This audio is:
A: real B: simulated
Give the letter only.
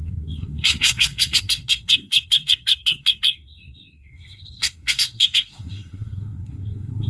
B